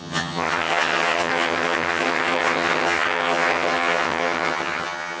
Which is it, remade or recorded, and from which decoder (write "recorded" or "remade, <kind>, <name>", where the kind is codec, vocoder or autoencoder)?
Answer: remade, vocoder, HiFi-GAN